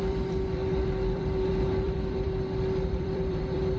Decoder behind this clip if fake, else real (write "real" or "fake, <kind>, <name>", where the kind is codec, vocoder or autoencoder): fake, vocoder, BigVGAN v2